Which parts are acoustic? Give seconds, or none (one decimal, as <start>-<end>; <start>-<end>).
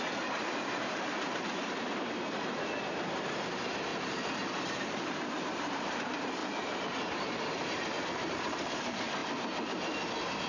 3.9-4.5; 6.4-8.3; 9.2-10.5